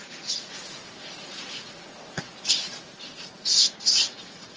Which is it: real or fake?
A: fake